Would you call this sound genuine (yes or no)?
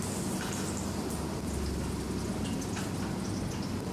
yes